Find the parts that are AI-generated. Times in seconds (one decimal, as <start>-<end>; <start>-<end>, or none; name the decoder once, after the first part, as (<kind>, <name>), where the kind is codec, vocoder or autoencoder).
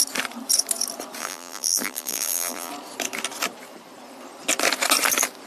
1.2-2.7 (vocoder, BigVGAN v2)